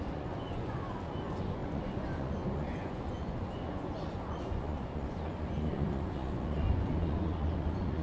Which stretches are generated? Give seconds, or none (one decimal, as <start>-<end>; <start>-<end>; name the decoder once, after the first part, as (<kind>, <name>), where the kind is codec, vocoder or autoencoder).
0.0-8.0 (vocoder, Vocos)